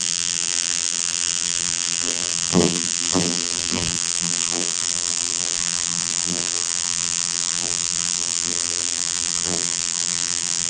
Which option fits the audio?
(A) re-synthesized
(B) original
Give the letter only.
A